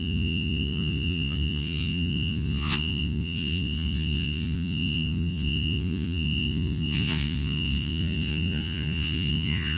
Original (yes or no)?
no